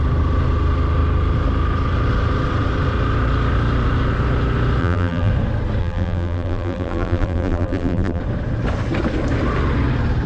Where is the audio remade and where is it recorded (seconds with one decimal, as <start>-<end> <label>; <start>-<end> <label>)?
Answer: 0.0-4.8 recorded; 4.8-5.3 remade; 5.3-5.8 recorded; 5.8-8.2 remade; 8.2-10.3 recorded